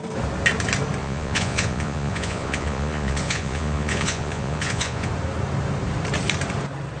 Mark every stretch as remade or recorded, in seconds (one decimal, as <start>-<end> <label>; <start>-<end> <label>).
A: 0.0-1.0 recorded; 1.0-5.1 remade; 5.1-7.0 recorded